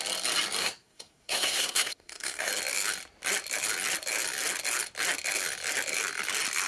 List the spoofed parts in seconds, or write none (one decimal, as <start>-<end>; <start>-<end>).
0.6-2.5